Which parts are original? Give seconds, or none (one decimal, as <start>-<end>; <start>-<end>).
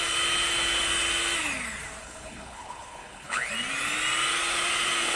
0.0-2.0; 3.5-5.2